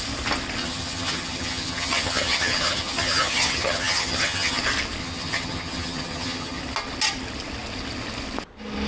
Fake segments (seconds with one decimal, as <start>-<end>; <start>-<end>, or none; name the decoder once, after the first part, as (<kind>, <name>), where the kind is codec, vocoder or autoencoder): 0.6-4.6 (vocoder, HiFi-GAN); 5.0-6.6